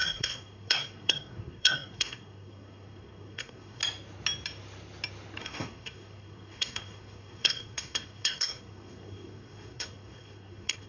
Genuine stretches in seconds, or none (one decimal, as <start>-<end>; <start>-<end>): 3.8-5.4